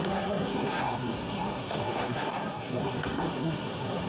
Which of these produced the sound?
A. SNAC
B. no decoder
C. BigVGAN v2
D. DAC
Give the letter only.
A